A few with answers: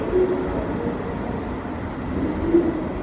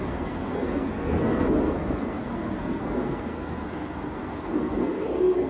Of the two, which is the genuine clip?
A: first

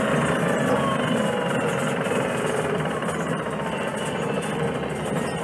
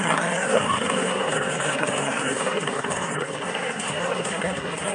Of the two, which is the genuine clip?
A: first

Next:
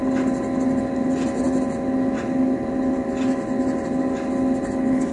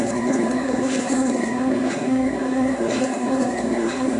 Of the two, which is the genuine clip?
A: first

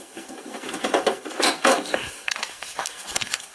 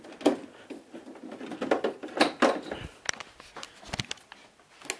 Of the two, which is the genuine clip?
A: second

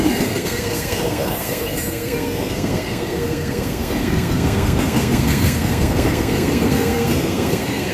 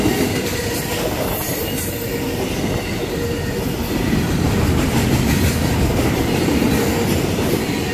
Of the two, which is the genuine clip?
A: second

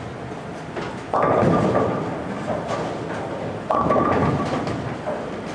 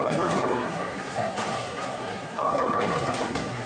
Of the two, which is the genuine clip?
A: first